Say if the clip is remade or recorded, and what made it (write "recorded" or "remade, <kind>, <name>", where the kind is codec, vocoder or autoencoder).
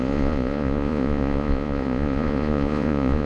remade, vocoder, Vocos